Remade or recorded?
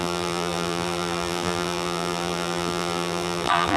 remade